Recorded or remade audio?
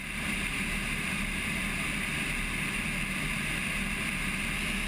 recorded